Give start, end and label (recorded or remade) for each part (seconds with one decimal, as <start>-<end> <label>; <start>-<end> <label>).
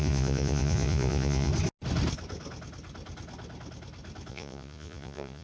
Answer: 0.0-1.5 remade; 1.5-4.3 recorded; 4.3-5.4 remade